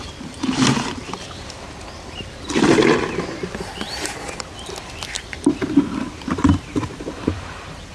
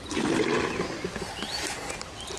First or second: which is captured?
second